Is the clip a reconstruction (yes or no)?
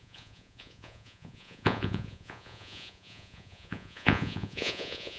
yes